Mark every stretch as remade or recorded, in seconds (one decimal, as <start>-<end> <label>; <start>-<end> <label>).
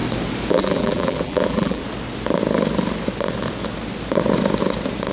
0.0-0.5 recorded; 0.5-1.8 remade; 1.8-5.1 recorded